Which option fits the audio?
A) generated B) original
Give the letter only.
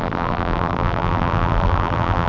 A